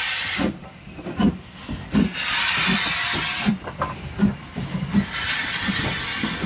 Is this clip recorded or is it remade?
recorded